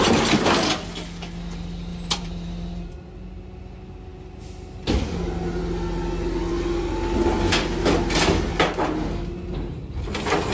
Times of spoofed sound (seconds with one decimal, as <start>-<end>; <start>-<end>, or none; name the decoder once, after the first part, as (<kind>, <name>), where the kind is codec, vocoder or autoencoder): 1.9-2.9 (vocoder, BigVGAN v2)